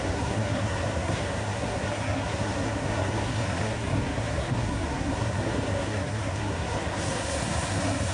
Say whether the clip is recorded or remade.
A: remade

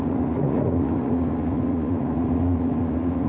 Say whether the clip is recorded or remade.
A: remade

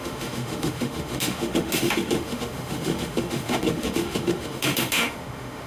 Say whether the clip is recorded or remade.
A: remade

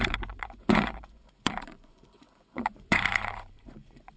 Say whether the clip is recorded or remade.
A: remade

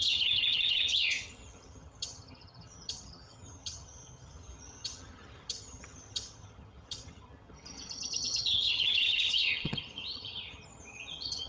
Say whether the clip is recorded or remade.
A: remade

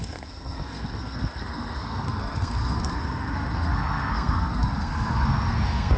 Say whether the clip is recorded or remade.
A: remade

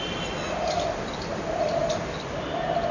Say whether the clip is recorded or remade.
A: recorded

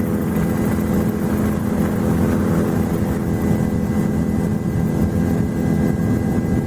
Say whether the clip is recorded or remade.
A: recorded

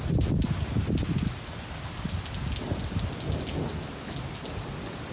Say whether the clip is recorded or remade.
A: recorded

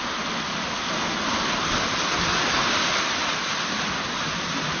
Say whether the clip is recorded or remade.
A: recorded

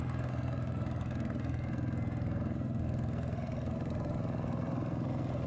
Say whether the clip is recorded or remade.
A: remade